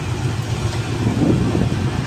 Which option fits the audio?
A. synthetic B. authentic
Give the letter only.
B